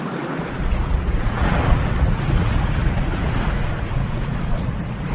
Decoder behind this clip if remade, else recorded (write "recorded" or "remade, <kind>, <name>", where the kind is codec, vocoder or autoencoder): remade, vocoder, Vocos